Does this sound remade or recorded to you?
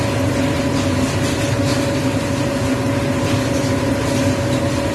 recorded